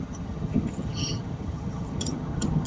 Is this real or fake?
fake